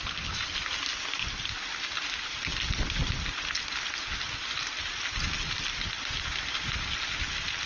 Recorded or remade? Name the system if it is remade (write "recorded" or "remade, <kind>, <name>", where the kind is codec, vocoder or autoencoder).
recorded